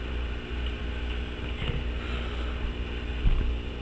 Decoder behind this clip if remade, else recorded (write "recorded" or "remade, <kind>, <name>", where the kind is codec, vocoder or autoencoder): recorded